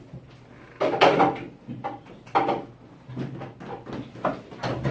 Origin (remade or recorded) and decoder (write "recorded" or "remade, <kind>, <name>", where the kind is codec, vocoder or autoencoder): recorded